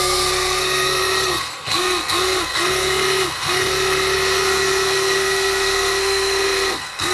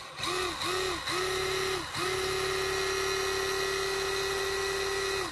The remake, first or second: first